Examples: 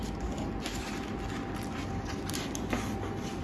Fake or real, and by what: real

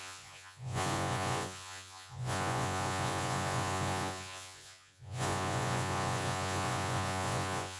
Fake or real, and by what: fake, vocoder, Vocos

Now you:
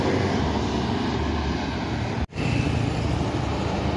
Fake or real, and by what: real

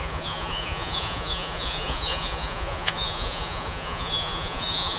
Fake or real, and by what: fake, vocoder, Vocos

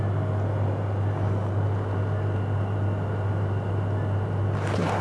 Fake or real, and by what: real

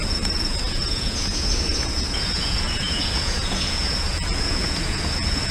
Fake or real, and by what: fake, vocoder, Vocos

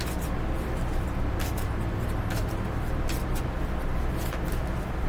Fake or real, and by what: real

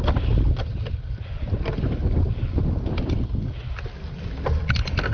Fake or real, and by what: real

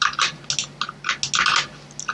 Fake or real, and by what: real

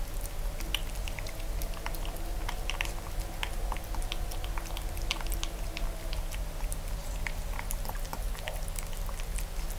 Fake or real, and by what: real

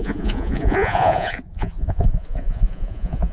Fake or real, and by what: fake, vocoder, Vocos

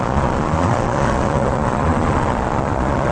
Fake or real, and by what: fake, vocoder, Vocos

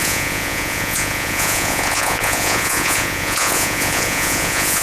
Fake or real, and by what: fake, vocoder, Vocos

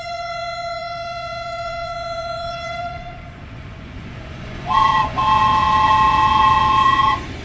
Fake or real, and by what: fake, vocoder, Vocos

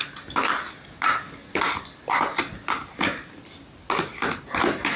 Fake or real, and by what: real